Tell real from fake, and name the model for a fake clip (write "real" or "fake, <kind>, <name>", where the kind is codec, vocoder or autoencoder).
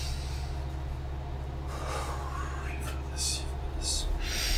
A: real